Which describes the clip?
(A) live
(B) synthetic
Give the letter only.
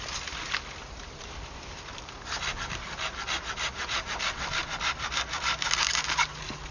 A